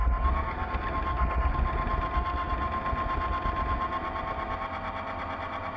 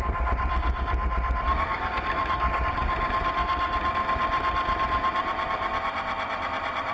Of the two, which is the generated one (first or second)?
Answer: second